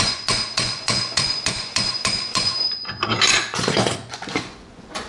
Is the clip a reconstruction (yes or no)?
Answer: yes